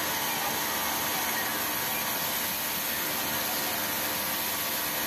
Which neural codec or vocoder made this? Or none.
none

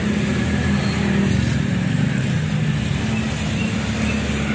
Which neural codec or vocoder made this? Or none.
none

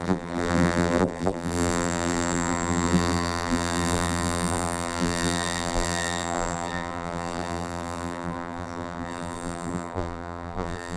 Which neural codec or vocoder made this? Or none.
vocoder, BigVGAN v2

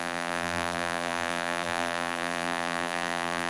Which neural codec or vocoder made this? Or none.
vocoder, BigVGAN v2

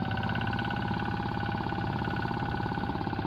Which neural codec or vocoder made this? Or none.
none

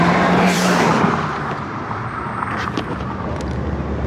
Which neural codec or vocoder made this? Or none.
vocoder, BigVGAN v2